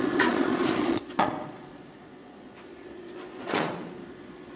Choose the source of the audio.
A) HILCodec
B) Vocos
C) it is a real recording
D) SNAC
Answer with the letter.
B